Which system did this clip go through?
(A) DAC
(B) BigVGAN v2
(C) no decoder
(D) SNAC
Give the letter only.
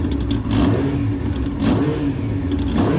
C